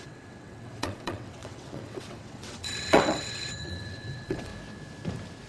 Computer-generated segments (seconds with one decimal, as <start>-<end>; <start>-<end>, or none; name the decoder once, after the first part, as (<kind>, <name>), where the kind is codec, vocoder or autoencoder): 0.0-4.5 (vocoder, WaveNeXt)